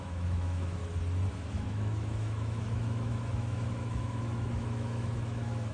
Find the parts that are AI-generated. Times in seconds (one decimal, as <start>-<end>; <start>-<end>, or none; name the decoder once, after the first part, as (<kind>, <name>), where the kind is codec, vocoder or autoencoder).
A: 0.0-0.8 (autoencoder, DAC-VAE); 1.3-5.7